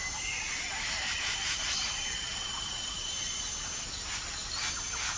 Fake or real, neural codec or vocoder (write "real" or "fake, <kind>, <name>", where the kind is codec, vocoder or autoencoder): fake, vocoder, BigVGAN v2